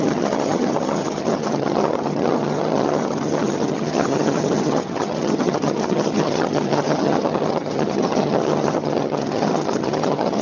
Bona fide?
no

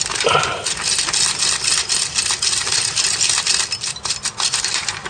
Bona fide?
yes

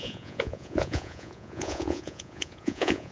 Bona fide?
no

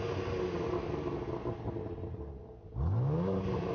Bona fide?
yes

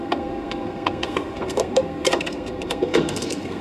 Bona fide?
no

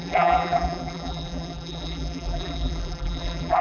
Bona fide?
no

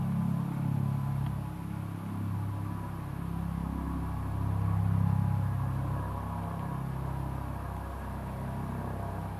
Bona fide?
yes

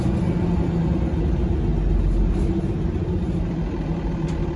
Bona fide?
yes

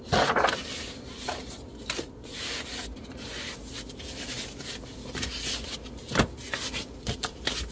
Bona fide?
yes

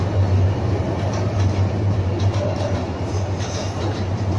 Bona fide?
yes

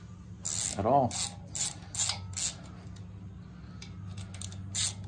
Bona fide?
yes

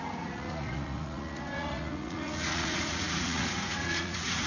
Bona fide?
no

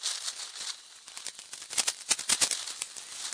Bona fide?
yes